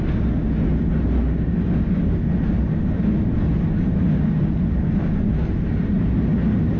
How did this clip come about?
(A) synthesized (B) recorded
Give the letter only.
B